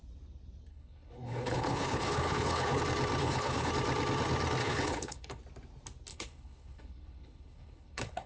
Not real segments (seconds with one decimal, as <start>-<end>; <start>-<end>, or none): 0.7-2.8; 3.2-3.7; 4.6-5.4; 6.1-8.3